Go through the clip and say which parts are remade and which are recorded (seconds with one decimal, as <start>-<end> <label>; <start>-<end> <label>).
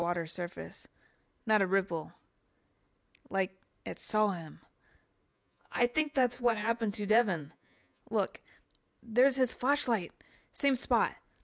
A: 0.0-5.3 recorded; 5.3-8.0 remade; 8.0-11.4 recorded